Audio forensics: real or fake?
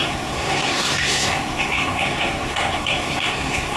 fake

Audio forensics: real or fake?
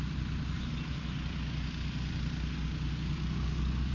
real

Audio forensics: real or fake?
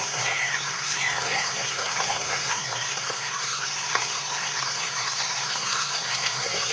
fake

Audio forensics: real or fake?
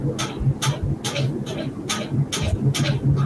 real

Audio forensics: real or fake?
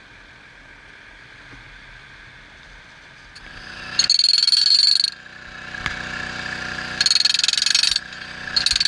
real